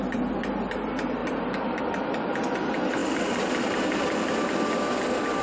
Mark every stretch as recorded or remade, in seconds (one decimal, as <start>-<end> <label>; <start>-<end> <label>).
0.0-1.2 recorded; 1.2-1.8 remade; 1.8-5.4 recorded